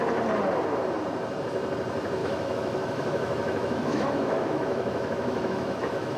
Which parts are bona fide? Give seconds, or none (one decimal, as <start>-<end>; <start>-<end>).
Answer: 0.0-2.2